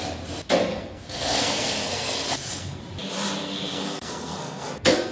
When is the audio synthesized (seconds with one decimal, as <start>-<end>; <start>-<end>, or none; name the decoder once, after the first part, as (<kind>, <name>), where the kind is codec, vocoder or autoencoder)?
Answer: 0.7-2.8 (codec, SNAC); 3.4-5.1